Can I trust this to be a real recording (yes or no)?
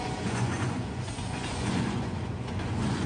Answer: no